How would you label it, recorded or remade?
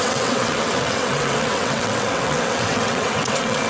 remade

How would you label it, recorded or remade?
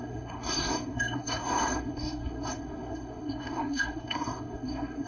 remade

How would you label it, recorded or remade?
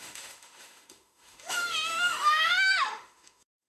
remade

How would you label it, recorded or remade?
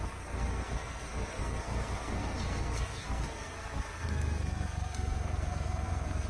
remade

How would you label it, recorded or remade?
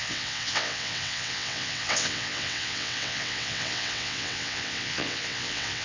remade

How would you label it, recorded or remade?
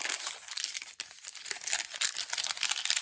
recorded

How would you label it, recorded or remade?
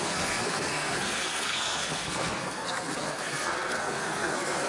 remade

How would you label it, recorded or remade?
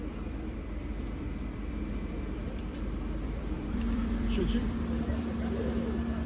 remade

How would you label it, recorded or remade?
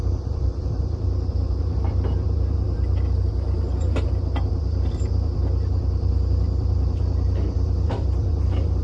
remade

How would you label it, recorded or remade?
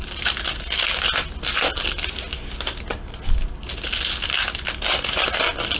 recorded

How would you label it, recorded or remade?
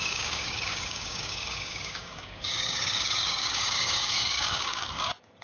remade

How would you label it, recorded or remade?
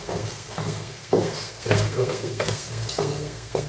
remade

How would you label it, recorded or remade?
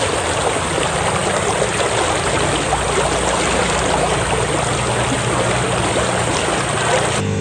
recorded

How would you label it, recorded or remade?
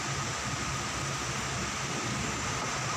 remade